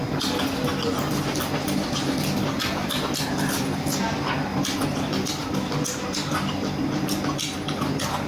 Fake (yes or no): no